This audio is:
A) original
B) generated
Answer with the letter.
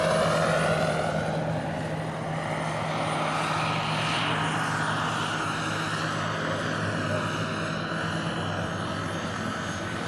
A